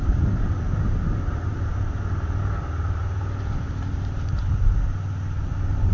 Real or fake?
real